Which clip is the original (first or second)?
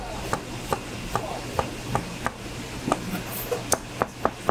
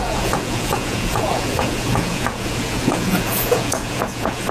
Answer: first